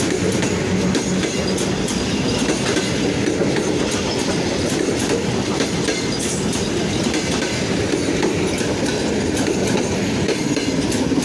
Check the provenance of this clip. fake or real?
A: real